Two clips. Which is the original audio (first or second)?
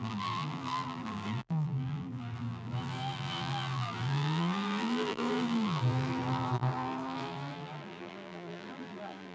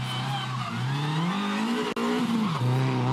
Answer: second